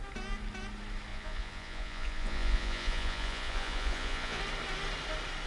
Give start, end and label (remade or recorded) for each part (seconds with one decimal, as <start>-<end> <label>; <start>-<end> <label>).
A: 0.0-1.1 recorded; 1.1-4.4 remade; 4.4-5.5 recorded